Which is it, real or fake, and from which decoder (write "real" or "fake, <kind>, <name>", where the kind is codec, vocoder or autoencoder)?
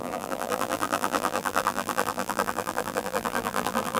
fake, vocoder, BigVGAN v2